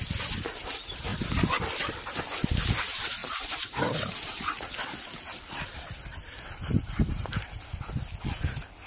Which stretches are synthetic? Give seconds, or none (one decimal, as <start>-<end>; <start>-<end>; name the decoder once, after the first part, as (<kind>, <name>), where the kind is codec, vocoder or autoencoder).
3.2-4.7 (vocoder, BigVGAN v2); 6.1-7.8